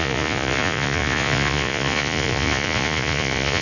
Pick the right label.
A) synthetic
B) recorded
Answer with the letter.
A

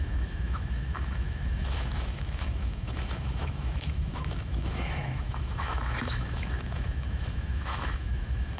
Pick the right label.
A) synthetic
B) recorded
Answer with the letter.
A